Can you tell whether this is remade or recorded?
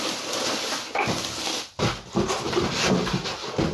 recorded